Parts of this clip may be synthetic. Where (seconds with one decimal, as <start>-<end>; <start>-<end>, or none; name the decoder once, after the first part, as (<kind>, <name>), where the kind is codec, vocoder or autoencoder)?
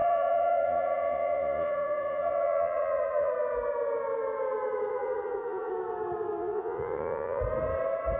0.0-3.3 (vocoder, Vocos); 4.9-5.7; 6.4-7.4